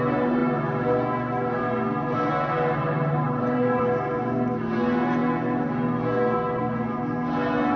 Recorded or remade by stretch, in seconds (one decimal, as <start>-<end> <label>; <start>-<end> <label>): 0.0-2.8 recorded; 2.8-3.8 remade; 3.8-7.8 recorded